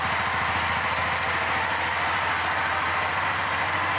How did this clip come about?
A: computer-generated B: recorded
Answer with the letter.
B